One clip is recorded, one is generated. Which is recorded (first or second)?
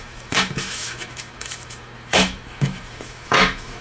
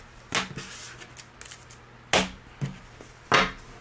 second